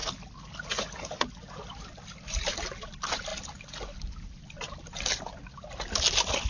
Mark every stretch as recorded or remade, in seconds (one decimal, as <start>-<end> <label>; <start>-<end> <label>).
0.0-6.5 recorded